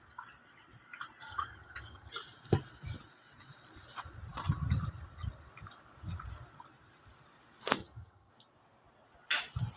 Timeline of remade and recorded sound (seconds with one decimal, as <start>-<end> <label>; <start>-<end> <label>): 0.0-1.3 recorded; 1.3-2.1 remade; 2.1-7.8 recorded; 7.8-8.3 remade; 8.3-9.8 recorded